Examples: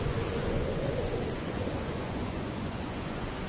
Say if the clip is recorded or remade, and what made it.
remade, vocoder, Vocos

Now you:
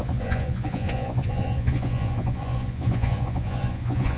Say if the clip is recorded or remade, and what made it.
remade, vocoder, Vocos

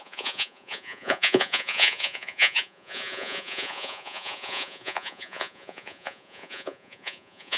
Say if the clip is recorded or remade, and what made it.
remade, vocoder, Vocos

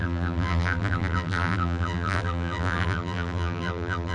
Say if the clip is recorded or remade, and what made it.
remade, vocoder, BigVGAN v2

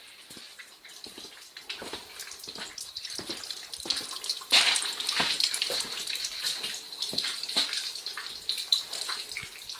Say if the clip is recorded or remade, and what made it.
remade, vocoder, BigVGAN v2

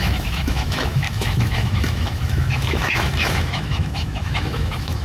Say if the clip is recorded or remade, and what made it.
remade, autoencoder, DAC-VAE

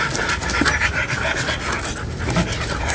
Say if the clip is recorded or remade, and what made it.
recorded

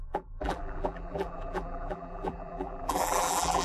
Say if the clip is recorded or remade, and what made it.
remade, vocoder, BigVGAN v2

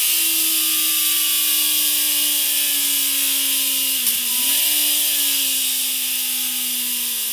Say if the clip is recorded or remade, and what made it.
recorded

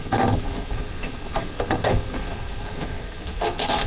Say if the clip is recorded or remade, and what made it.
remade, codec, SNAC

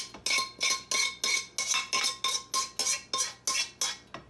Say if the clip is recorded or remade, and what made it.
recorded